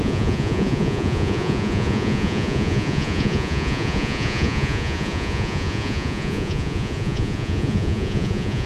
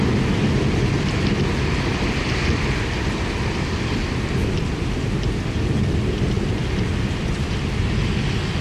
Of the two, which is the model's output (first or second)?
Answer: first